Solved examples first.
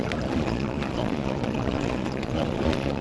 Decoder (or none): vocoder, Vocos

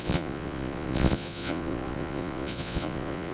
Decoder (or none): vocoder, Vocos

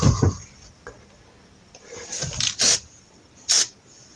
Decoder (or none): none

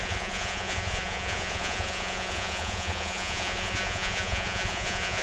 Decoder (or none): vocoder, Vocos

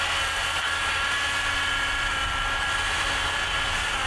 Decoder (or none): none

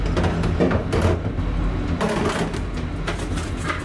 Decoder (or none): none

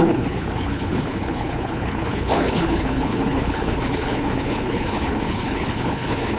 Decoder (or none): codec, HILCodec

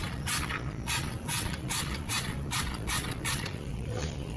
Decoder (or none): vocoder, Vocos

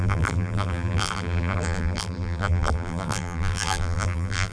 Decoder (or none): vocoder, BigVGAN v2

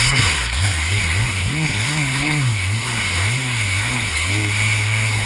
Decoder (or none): codec, SNAC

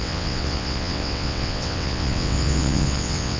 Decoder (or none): vocoder, WaveNeXt